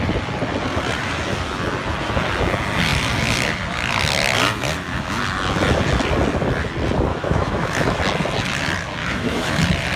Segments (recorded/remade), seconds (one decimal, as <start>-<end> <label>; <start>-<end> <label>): 0.0-7.1 recorded; 7.1-8.0 remade; 8.0-9.0 recorded; 9.0-9.6 remade; 9.6-10.0 recorded